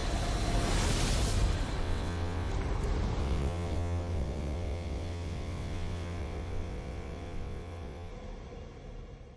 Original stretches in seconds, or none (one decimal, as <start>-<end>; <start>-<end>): 0.0-1.8; 2.5-3.2; 8.1-9.4